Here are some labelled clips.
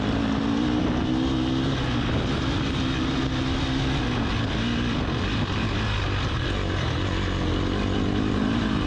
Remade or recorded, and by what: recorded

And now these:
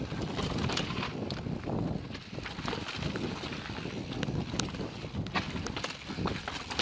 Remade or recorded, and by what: recorded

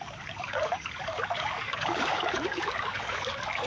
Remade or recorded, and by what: remade, codec, DAC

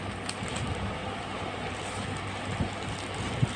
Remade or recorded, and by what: recorded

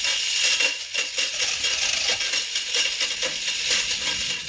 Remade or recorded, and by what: recorded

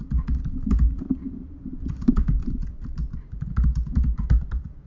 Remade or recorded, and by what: remade, vocoder, BigVGAN v2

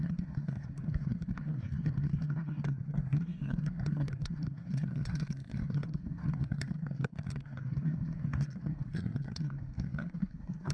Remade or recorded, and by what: remade, codec, SNAC